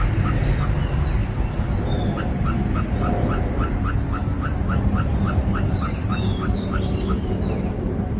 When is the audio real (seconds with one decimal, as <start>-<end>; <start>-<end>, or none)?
0.0-1.2; 3.8-4.2; 7.7-8.2